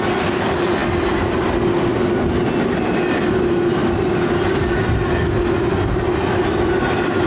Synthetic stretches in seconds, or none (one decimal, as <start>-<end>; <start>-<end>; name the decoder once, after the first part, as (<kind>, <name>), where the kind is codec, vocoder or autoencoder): none